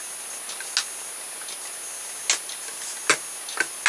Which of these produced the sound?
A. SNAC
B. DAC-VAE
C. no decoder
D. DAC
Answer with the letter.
C